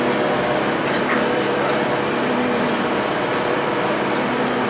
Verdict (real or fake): fake